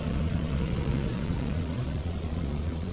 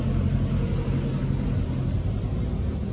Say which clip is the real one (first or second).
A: second